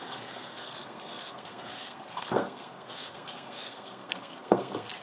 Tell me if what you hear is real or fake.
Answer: fake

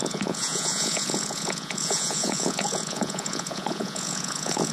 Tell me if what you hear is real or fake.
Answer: fake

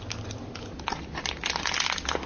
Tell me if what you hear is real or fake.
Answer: real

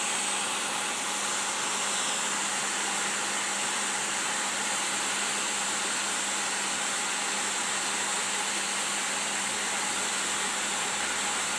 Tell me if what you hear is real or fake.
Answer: real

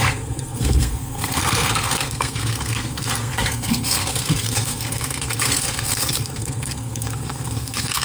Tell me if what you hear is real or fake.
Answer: fake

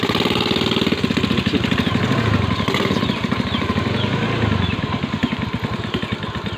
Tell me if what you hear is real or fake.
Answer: real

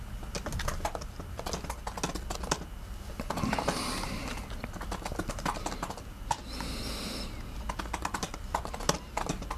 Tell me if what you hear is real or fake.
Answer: real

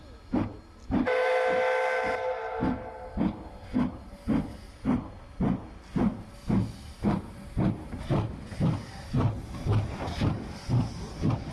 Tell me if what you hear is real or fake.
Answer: real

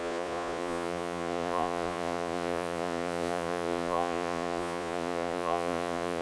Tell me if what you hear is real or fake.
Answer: fake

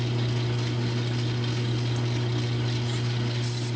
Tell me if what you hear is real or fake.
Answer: real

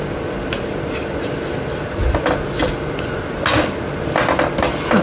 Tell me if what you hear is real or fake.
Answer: real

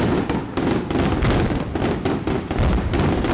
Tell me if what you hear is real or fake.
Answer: real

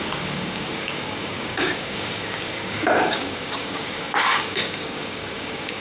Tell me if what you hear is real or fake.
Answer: fake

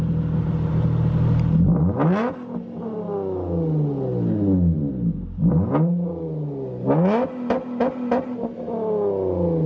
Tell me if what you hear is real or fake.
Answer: real